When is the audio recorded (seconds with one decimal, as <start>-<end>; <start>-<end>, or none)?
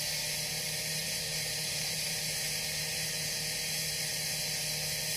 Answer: 0.0-1.0; 4.1-5.2